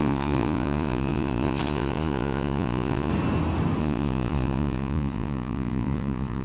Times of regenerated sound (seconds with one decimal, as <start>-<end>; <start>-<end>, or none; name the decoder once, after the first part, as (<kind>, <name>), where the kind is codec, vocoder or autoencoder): 0.0-3.1 (vocoder, Vocos); 3.8-6.4